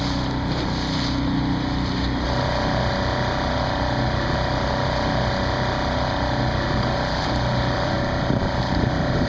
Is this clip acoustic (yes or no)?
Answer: yes